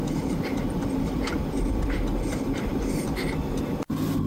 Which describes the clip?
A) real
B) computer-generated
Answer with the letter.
A